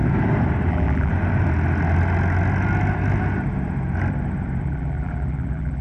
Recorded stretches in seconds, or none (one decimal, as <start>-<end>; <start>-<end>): 0.0-0.7; 1.1-4.6